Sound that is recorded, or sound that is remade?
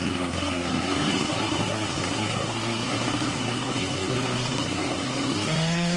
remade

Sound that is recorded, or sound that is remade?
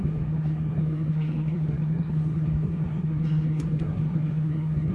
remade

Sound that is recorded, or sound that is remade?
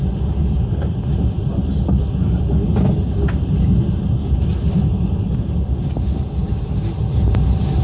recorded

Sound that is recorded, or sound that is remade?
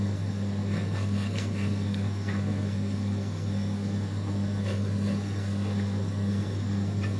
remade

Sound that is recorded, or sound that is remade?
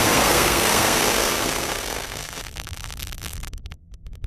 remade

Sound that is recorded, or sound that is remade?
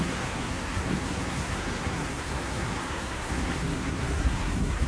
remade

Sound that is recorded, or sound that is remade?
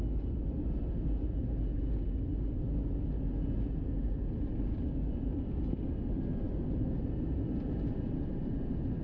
recorded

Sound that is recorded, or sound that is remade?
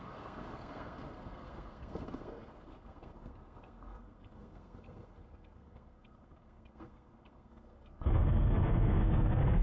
remade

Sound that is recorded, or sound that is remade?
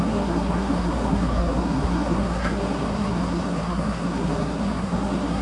remade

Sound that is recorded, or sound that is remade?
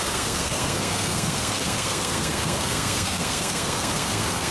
remade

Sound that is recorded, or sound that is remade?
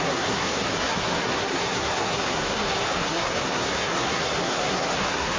remade